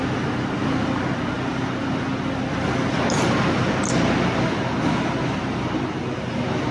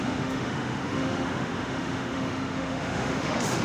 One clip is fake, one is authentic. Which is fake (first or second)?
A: second